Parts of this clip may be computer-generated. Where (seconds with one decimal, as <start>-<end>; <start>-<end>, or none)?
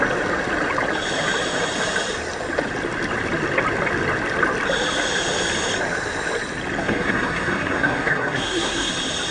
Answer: 6.8-8.9